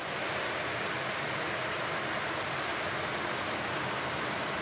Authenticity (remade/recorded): recorded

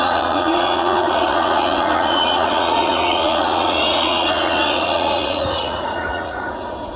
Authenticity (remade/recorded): remade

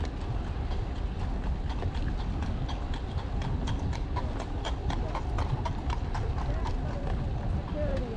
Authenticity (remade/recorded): recorded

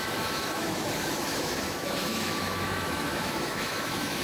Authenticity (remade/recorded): remade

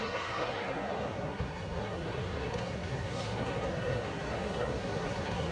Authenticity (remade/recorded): remade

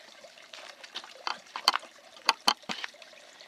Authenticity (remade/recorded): remade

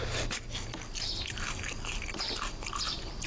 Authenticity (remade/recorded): recorded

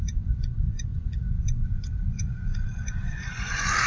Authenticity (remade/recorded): remade